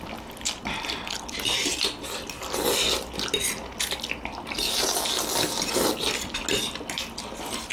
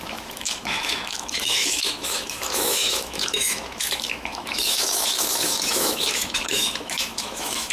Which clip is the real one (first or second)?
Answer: first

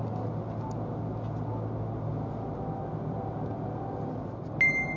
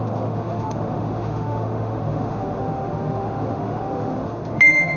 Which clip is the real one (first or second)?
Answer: first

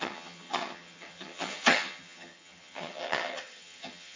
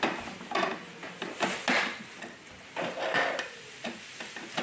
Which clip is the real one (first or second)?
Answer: second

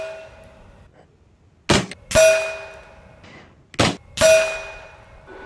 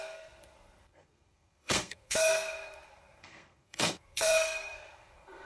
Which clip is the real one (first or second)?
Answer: first